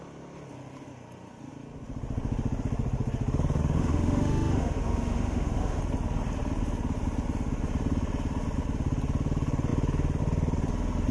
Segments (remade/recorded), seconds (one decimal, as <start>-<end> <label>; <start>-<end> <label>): 0.0-3.6 recorded; 3.6-5.8 remade; 5.8-11.1 recorded